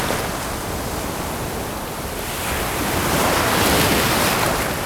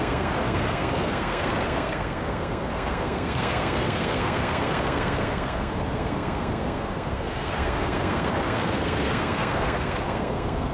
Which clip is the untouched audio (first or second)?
first